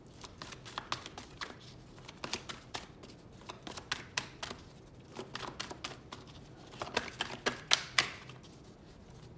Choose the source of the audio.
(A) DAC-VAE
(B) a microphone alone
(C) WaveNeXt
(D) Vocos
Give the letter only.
B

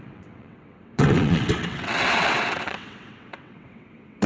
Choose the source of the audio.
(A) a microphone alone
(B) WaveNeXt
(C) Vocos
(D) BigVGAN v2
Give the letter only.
B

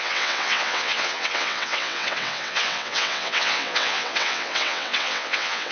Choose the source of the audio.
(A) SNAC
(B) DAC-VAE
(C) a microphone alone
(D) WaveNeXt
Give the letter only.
D